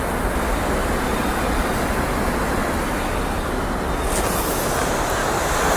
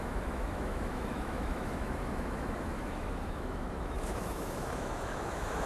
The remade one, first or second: second